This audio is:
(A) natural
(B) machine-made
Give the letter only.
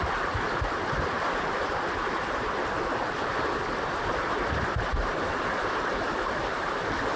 A